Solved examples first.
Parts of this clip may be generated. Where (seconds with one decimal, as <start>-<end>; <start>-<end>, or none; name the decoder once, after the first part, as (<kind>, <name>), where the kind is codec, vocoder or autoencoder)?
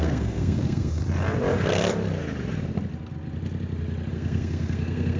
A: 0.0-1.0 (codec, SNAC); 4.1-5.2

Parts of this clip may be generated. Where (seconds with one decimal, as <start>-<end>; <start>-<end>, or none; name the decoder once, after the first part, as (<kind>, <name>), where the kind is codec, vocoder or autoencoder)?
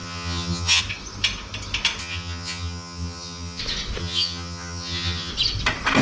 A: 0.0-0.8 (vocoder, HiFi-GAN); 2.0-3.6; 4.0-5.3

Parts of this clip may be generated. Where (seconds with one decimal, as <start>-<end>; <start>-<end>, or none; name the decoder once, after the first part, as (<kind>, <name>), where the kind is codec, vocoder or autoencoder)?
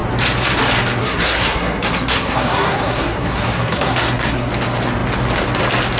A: 1.0-4.5 (codec, SNAC)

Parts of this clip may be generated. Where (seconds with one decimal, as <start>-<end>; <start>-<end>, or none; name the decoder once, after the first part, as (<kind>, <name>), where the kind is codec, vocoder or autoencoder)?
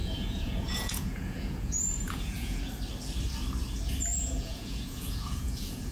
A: 0.0-2.6 (vocoder, Vocos); 4.1-5.9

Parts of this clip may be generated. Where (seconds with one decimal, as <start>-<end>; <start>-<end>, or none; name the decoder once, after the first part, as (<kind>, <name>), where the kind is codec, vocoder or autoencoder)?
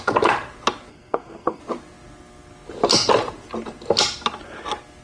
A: 0.9-1.6 (codec, SNAC)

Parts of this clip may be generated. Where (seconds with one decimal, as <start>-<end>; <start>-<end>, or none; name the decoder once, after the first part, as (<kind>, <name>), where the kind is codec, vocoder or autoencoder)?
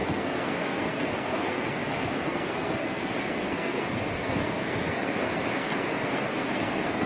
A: 0.0-7.1 (codec, SNAC)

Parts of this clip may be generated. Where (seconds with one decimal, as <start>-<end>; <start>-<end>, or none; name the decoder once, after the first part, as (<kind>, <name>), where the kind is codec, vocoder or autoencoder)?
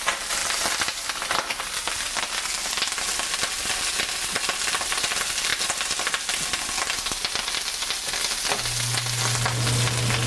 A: 0.4-2.2 (vocoder, BigVGAN v2)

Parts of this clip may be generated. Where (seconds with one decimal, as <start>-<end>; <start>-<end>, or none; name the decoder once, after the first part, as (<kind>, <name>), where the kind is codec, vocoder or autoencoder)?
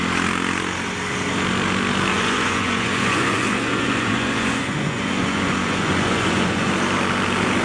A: 2.1-6.7 (vocoder, Vocos)